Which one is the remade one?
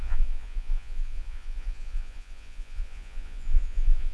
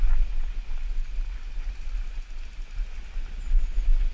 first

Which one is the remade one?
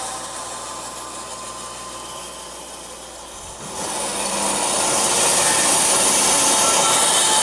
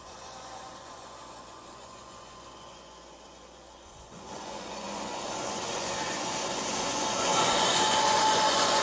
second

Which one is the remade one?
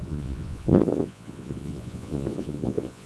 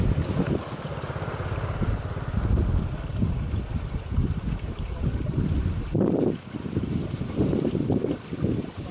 first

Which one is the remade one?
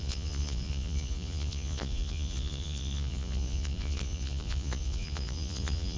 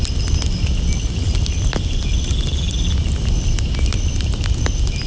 first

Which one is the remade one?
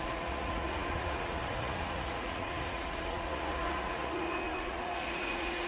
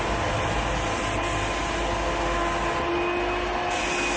first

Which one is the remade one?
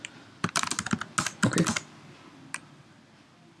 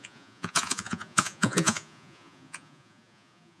second